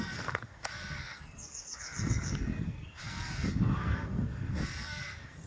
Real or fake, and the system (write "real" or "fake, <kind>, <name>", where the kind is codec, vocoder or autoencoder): fake, codec, SNAC